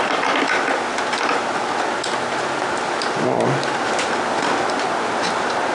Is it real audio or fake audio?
real